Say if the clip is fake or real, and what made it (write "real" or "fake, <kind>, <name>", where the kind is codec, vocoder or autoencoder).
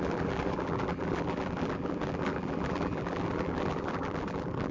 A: fake, vocoder, BigVGAN v2